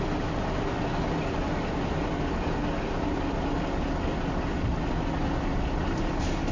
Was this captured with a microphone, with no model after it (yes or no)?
yes